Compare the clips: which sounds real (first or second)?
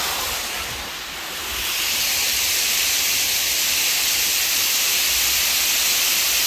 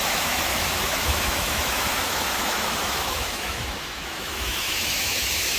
first